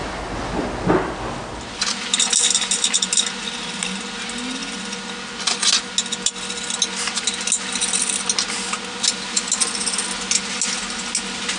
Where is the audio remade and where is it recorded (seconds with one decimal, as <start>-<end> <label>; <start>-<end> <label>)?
0.0-11.6 recorded